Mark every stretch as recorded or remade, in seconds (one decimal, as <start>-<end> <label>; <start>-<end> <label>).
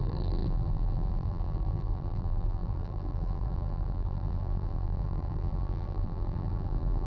0.0-7.1 remade